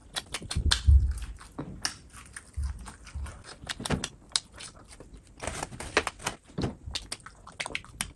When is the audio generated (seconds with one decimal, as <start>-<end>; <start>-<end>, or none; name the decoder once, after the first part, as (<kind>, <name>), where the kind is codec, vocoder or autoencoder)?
none